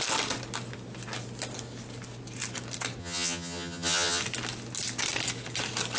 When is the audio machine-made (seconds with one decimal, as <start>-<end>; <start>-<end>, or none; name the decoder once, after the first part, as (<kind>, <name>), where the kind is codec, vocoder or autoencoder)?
3.0-4.2 (vocoder, HiFi-GAN)